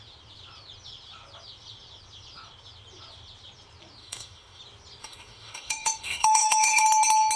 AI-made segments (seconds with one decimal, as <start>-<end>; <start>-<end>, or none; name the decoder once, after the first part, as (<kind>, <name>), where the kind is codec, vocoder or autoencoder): 4.0-4.6 (autoencoder, DAC-VAE); 5.0-6.8